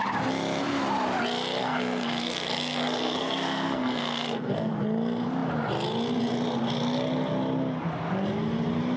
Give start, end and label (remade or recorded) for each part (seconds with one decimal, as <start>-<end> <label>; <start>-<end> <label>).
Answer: 0.0-1.6 recorded; 1.6-4.7 remade; 4.7-9.0 recorded